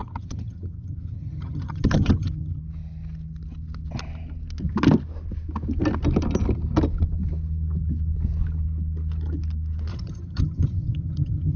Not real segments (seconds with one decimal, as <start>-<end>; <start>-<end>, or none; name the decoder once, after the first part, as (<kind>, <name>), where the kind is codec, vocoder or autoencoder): 0.0-2.6 (vocoder, HiFi-GAN); 9.9-11.6